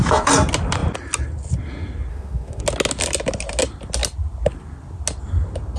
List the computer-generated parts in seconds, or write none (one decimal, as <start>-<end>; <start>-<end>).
2.1-2.6

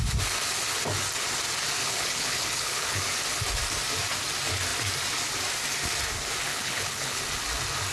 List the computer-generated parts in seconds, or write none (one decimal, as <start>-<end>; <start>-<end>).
1.8-3.0; 6.5-7.2

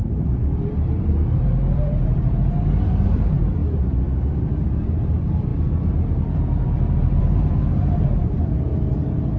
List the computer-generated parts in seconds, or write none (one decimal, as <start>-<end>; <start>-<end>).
0.0-3.6; 4.3-8.7

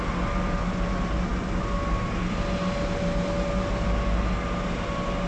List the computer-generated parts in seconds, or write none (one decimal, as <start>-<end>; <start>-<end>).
none

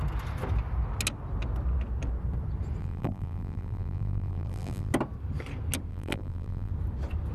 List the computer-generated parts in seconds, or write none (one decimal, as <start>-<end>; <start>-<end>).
2.8-4.9; 5.9-6.7